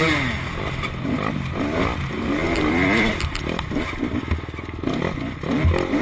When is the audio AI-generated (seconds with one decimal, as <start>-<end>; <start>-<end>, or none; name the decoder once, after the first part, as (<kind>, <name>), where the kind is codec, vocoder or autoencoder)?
none